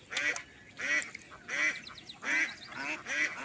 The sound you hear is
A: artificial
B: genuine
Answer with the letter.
B